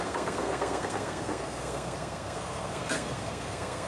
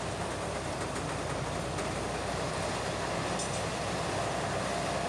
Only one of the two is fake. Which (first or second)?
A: first